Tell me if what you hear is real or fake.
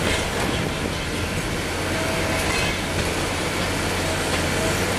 real